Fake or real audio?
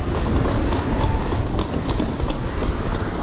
real